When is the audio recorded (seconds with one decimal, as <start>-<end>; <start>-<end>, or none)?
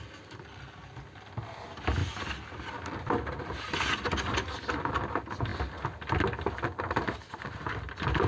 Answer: 0.0-8.3